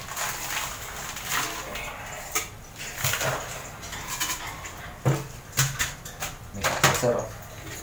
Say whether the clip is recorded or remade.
recorded